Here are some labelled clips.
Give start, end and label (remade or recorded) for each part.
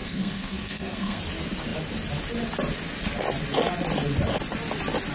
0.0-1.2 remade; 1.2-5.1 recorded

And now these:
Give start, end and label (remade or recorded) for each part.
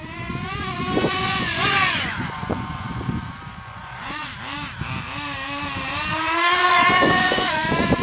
0.0-4.3 remade; 4.3-6.1 recorded; 6.1-8.0 remade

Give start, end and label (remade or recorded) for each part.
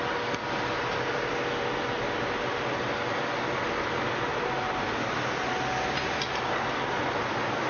0.0-7.7 recorded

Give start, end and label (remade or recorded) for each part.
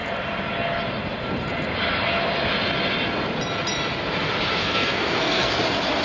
0.0-4.6 recorded; 4.6-5.6 remade; 5.6-6.0 recorded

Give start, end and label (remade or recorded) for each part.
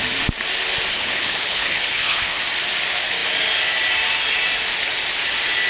0.0-0.9 recorded; 0.9-2.4 remade; 2.4-5.7 recorded